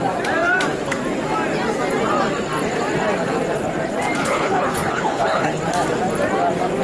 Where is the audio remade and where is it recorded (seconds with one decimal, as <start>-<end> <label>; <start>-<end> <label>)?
0.0-4.2 recorded; 4.2-5.6 remade; 5.6-6.8 recorded